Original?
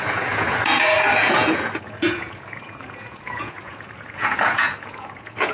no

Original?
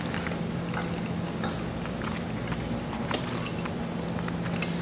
yes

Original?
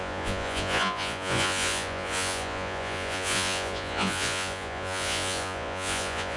no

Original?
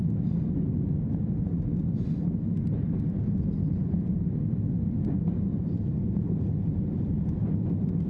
yes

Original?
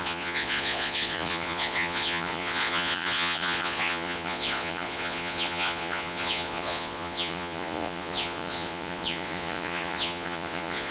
no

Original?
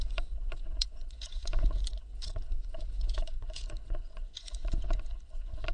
no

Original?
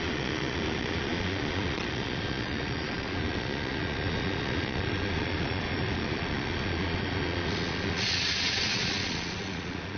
no